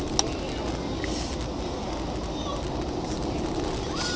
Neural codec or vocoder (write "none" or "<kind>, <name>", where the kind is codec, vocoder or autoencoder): none